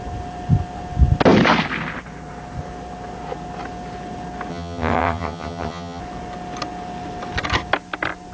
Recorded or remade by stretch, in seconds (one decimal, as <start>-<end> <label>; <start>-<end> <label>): 0.0-4.5 recorded; 4.5-6.0 remade; 6.0-8.3 recorded